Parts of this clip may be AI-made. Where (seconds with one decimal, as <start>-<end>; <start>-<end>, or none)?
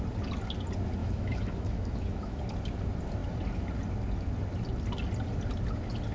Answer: 1.0-2.4